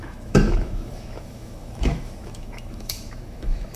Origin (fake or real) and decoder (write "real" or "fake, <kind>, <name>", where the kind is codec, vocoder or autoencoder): fake, autoencoder, DAC-VAE